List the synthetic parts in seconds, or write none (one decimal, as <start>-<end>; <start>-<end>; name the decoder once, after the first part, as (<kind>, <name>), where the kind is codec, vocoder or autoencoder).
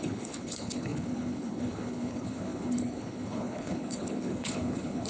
0.0-5.1 (codec, HILCodec)